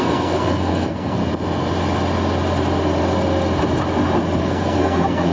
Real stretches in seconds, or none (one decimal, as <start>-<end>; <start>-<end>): 1.2-4.4